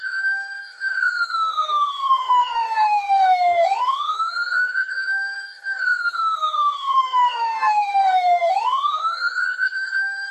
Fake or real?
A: fake